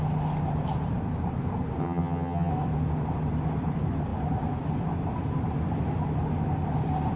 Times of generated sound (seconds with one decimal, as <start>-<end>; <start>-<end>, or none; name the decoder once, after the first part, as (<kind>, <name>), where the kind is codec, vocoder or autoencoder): 1.8-2.5 (vocoder, HiFi-GAN)